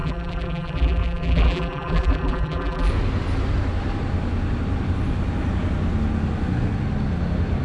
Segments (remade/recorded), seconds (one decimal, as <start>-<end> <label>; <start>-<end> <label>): 0.0-2.9 remade; 2.9-7.6 recorded